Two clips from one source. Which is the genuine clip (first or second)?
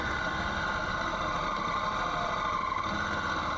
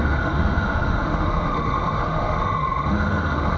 first